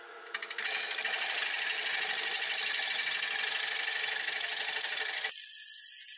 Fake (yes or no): no